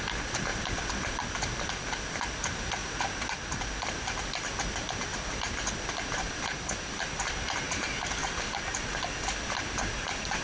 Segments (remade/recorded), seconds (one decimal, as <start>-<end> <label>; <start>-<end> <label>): 0.0-10.4 recorded

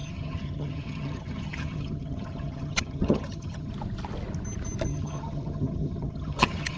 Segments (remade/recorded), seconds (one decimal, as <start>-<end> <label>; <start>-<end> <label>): 0.0-3.7 remade; 3.7-4.9 recorded; 4.9-6.8 remade

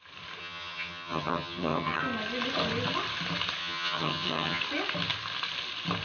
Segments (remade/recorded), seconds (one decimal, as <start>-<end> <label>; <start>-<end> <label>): 0.0-0.4 recorded; 0.4-2.0 remade; 2.0-3.6 recorded; 3.6-4.6 remade; 4.6-6.0 recorded